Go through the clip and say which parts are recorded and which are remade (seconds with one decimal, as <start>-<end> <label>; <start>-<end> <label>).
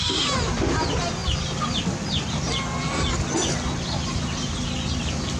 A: 0.0-5.4 recorded